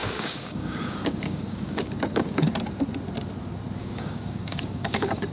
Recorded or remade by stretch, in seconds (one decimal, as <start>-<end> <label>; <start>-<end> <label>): 0.0-2.5 remade; 2.5-3.8 recorded; 3.8-5.3 remade